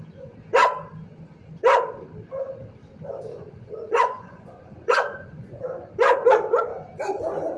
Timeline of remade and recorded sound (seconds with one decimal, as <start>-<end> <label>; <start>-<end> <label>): 0.0-3.3 recorded; 3.3-5.6 remade; 5.6-7.6 recorded